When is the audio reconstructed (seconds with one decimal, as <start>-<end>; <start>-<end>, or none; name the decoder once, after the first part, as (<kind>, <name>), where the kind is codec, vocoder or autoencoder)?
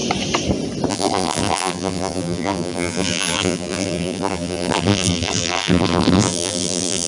0.9-7.1 (vocoder, BigVGAN v2)